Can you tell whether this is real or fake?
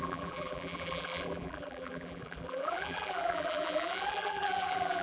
fake